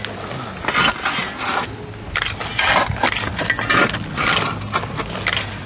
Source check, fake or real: real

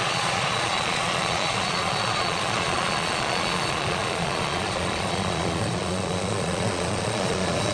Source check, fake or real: fake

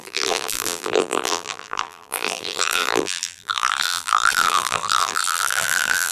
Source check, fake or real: fake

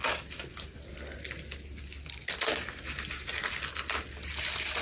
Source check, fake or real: real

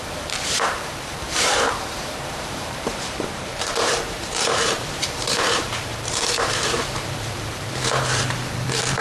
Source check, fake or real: fake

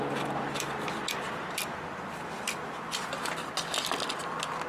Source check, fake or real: real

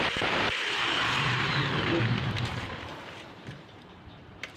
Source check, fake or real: fake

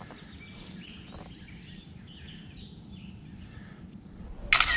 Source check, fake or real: real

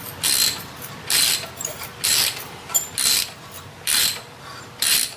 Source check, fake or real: fake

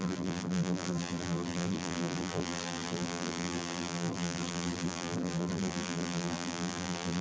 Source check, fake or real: fake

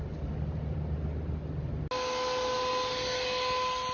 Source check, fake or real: real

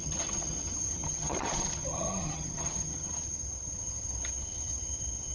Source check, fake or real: fake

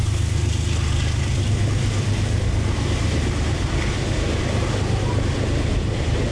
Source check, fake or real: real